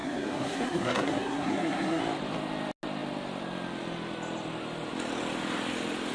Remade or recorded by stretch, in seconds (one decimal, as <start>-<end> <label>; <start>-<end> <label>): 0.0-2.0 remade; 2.0-6.1 recorded

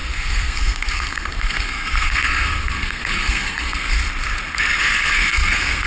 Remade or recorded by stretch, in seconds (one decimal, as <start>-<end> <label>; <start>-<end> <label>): 0.0-4.0 remade; 4.0-4.8 recorded; 4.8-5.9 remade

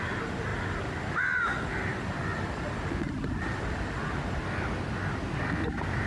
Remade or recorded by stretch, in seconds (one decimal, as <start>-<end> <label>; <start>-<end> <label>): 0.0-6.1 recorded